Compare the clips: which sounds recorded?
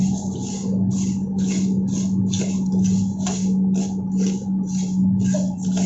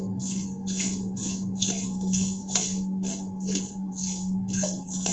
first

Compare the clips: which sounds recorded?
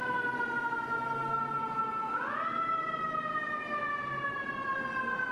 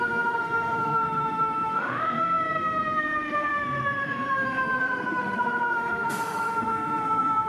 first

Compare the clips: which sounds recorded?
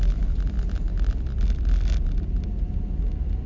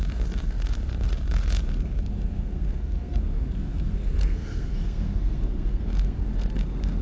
first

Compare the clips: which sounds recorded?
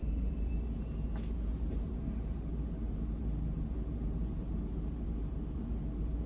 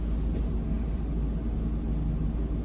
second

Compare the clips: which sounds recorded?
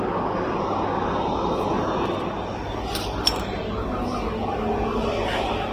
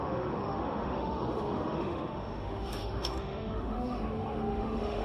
first